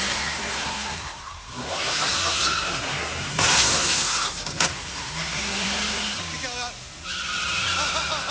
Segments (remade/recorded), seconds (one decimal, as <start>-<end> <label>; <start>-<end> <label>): 0.0-6.2 remade; 6.2-8.3 recorded